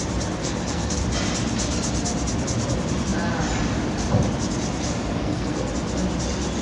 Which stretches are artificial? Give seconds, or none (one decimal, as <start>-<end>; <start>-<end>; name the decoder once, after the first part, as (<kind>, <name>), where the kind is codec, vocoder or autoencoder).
0.4-1.0 (codec, SNAC); 5.1-5.7